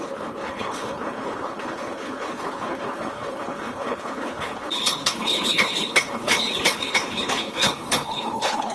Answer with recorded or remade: remade